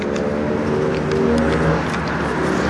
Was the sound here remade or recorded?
recorded